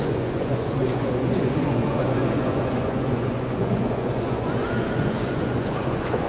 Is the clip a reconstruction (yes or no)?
yes